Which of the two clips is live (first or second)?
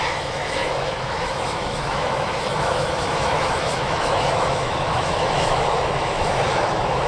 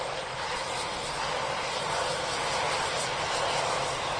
second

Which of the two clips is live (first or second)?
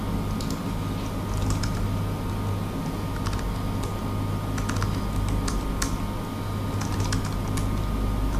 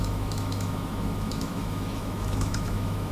first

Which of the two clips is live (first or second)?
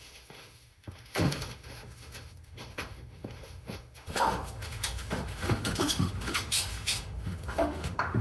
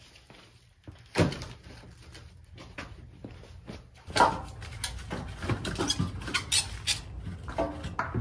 second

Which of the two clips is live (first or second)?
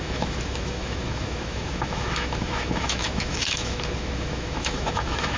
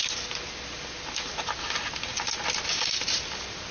second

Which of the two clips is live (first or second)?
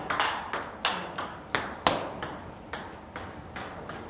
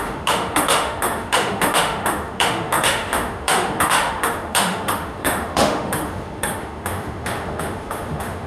first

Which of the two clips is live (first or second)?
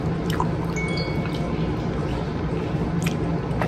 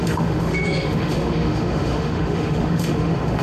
first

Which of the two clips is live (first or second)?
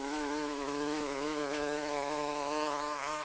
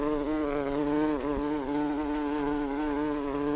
second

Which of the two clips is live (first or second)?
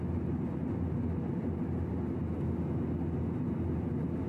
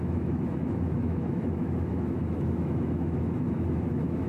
first